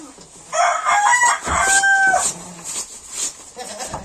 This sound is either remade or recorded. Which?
recorded